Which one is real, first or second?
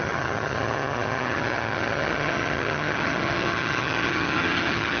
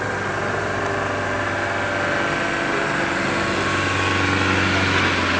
second